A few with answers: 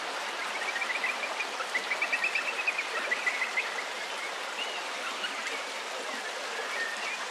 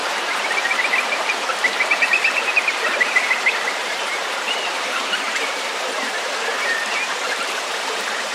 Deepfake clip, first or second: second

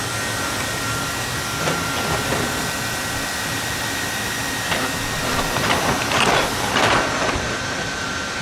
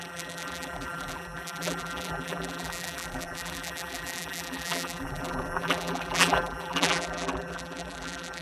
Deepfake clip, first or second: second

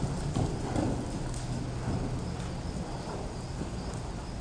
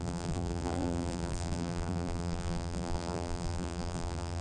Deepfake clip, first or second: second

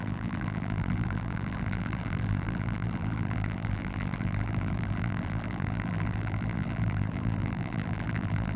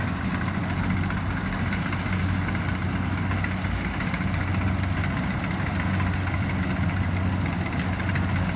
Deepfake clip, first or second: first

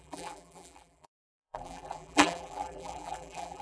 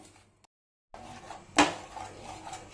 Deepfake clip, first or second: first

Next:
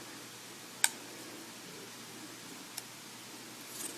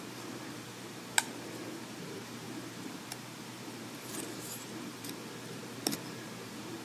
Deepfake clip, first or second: second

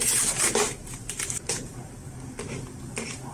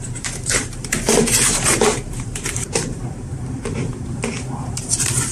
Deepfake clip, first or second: second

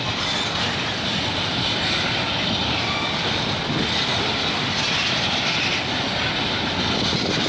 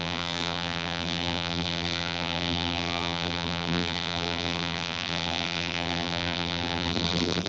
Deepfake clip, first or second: second